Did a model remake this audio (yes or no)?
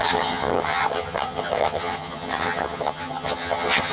yes